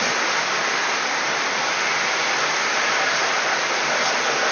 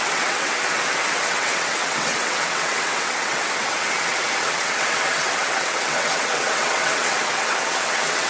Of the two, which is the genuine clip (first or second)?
first